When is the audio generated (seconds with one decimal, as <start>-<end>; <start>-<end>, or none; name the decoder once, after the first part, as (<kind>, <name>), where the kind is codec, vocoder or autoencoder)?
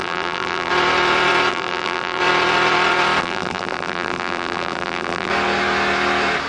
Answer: 0.0-0.7 (vocoder, BigVGAN v2); 1.5-2.2; 3.2-5.3